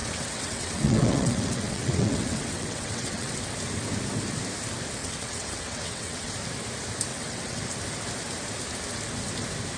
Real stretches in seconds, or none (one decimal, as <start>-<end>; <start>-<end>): 3.3-5.0; 6.3-7.1; 7.6-9.8